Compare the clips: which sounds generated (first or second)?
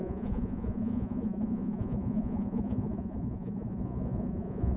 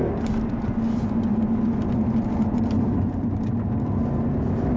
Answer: first